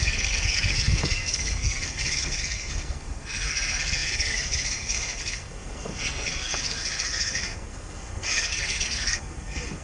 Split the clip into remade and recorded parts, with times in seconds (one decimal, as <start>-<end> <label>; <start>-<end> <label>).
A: 0.0-9.8 remade